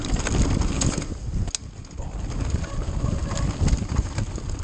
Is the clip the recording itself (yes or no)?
yes